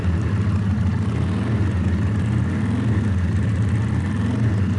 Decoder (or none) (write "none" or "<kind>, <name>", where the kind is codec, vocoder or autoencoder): none